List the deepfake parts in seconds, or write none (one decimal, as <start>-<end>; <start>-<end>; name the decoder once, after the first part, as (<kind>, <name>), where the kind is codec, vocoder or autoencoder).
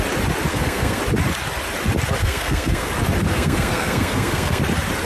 0.5-1.0 (codec, SNAC); 2.2-2.9; 3.3-4.6